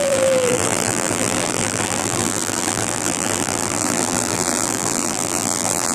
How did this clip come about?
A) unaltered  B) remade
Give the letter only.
B